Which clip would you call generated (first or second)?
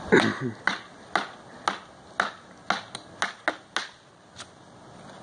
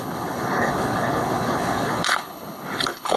second